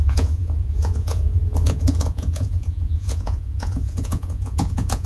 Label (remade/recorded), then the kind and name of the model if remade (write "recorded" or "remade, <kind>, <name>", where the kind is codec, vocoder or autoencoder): remade, vocoder, Vocos